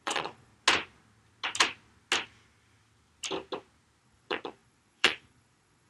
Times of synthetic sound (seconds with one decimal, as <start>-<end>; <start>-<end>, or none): 0.0-0.5; 4.0-5.9